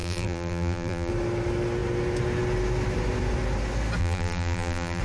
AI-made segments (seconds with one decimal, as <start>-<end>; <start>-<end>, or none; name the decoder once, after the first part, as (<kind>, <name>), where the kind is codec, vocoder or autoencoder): 0.0-1.1 (vocoder, BigVGAN v2); 4.0-5.0